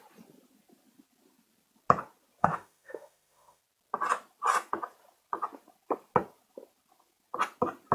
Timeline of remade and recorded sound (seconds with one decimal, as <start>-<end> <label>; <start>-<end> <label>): 0.0-2.4 recorded; 2.4-3.6 remade; 3.6-7.9 recorded